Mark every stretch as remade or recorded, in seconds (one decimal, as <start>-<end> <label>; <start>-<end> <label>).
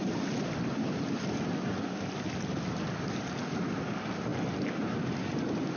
0.0-5.8 recorded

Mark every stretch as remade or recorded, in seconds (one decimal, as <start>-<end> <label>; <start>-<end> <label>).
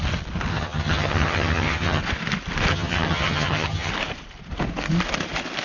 0.0-0.5 recorded; 0.5-2.0 remade; 2.0-2.7 recorded; 2.7-3.9 remade; 3.9-5.6 recorded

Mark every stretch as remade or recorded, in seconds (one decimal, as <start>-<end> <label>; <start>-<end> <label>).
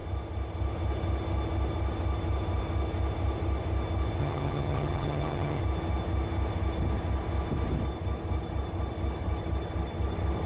0.0-4.2 recorded; 4.2-5.6 remade; 5.6-10.5 recorded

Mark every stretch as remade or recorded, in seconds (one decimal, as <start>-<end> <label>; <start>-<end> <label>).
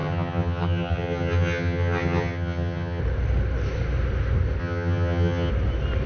0.0-3.0 remade; 3.0-4.6 recorded; 4.6-5.5 remade; 5.5-6.1 recorded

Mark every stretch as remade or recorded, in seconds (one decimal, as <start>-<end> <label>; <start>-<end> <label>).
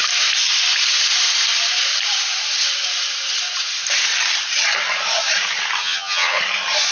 0.0-5.8 recorded; 5.8-6.4 remade; 6.4-6.9 recorded